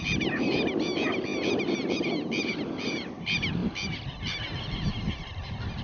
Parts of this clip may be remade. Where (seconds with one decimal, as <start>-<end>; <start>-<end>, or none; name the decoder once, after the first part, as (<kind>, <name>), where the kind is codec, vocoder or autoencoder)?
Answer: none